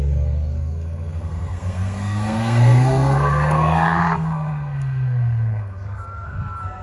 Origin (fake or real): fake